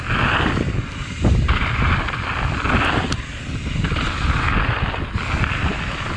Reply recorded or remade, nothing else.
recorded